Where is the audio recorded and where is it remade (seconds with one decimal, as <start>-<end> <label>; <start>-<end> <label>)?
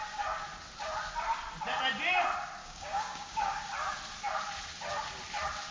0.0-2.6 recorded; 2.6-3.6 remade; 3.6-5.7 recorded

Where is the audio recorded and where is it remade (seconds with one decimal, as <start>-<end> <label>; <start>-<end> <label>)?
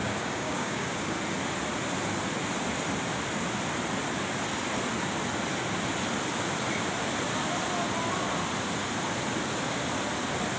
0.0-1.2 remade; 1.2-10.6 recorded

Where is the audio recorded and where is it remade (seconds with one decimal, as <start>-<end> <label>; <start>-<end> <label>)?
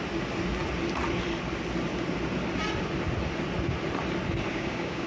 0.0-4.5 recorded; 4.5-5.1 remade